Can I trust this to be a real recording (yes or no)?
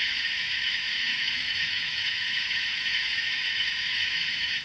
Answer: no